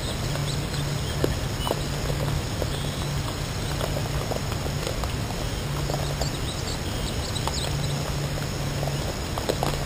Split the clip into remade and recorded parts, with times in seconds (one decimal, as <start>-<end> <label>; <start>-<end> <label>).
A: 0.0-9.9 recorded